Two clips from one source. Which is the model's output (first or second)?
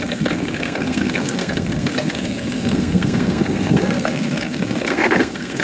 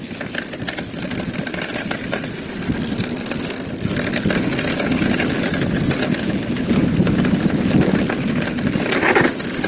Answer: first